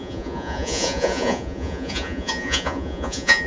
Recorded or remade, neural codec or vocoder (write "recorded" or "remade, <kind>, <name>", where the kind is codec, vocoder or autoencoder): remade, vocoder, Vocos